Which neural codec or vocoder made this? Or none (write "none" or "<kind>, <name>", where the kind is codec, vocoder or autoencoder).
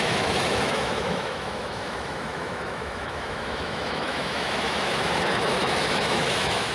autoencoder, DAC-VAE